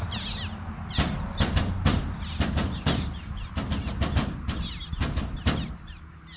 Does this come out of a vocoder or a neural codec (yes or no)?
no